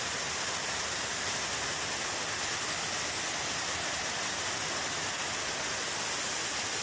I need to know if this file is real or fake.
real